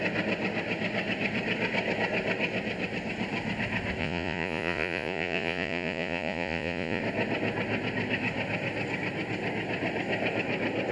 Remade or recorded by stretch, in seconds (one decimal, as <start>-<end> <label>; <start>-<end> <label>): 0.0-4.0 recorded; 4.0-7.0 remade; 7.0-10.9 recorded